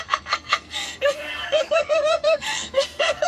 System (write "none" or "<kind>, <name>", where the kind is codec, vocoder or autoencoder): codec, SNAC